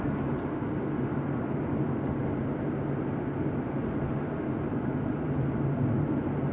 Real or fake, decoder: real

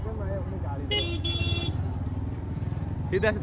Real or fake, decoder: real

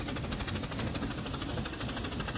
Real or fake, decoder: real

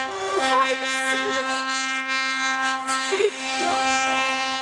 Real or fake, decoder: fake, autoencoder, DAC-VAE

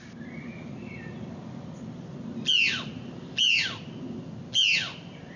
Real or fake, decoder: real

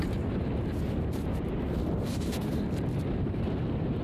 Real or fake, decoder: fake, vocoder, BigVGAN v2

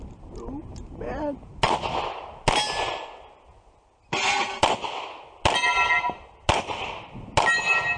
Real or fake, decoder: real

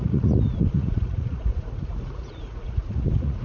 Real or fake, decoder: fake, vocoder, Vocos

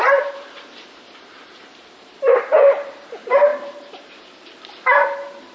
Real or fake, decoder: fake, vocoder, BigVGAN v2